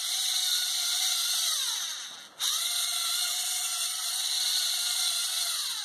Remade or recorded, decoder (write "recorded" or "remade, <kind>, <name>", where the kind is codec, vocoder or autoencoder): recorded